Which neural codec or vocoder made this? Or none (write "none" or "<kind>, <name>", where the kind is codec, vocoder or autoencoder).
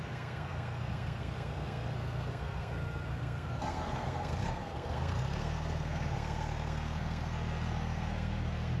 codec, SNAC